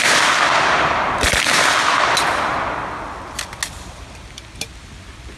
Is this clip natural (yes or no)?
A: yes